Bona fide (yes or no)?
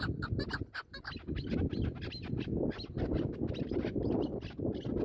yes